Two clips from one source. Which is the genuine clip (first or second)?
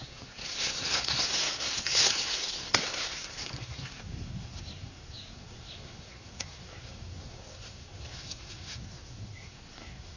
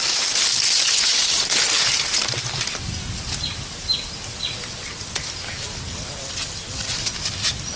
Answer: second